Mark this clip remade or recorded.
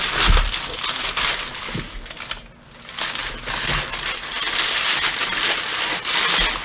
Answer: recorded